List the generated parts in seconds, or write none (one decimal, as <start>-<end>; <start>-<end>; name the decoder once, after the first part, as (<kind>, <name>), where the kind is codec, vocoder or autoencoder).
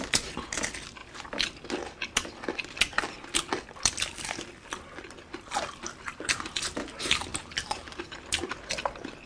0.0-7.3 (vocoder, BigVGAN v2); 8.0-9.3